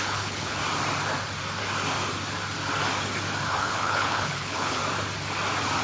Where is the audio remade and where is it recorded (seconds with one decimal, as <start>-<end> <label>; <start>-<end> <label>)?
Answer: 0.0-0.6 remade; 0.6-3.5 recorded; 3.5-4.8 remade; 4.8-5.8 recorded